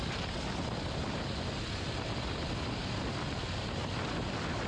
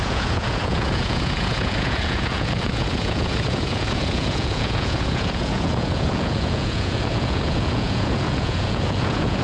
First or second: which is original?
first